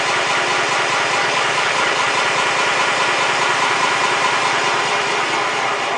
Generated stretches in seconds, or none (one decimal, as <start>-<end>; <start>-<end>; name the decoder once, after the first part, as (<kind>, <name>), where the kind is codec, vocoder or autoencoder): 1.2-2.1 (codec, DAC)

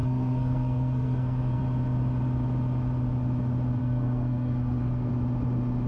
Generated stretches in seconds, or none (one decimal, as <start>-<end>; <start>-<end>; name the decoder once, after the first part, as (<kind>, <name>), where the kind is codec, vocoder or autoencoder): 0.0-1.6 (codec, SNAC); 3.8-5.1

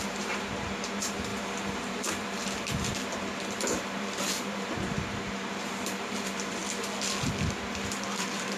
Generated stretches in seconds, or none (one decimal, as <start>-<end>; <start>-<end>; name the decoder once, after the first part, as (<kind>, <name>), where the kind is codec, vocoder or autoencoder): 0.0-6.6 (vocoder, BigVGAN v2); 8.2-8.6

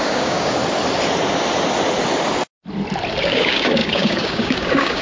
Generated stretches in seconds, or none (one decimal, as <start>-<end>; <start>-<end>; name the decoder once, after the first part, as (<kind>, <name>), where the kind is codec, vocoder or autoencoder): 0.0-0.6 (codec, DAC); 3.1-5.0

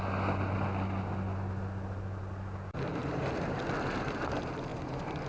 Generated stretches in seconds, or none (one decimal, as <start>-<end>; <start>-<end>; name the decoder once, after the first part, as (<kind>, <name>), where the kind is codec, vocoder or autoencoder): none

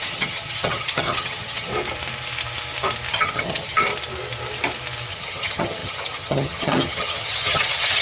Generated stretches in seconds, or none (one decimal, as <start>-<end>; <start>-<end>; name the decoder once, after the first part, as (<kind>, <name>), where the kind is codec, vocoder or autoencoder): 0.0-1.7 (vocoder, HiFi-GAN); 3.1-3.9; 5.1-8.0

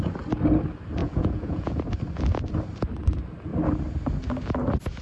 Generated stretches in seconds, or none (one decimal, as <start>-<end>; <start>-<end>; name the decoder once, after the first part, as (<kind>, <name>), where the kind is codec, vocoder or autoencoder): 1.0-1.8 (vocoder, Vocos)

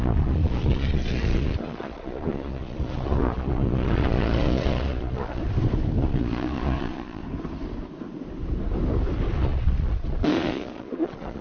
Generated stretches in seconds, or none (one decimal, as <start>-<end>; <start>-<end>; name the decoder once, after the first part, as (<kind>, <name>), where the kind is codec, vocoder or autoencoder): 0.0-5.4 (vocoder, Vocos); 6.0-7.2; 9.4-11.4